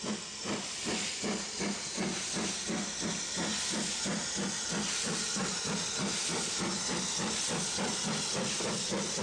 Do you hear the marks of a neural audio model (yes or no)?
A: no